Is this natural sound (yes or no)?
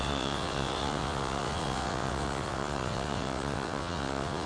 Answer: no